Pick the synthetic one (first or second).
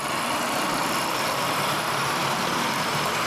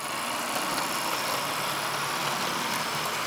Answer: first